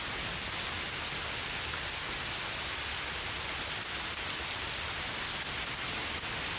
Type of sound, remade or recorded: recorded